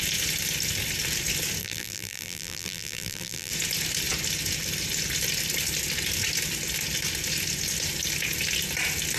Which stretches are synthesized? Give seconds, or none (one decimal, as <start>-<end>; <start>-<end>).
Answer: 1.6-3.5